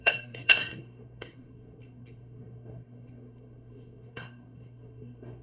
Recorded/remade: remade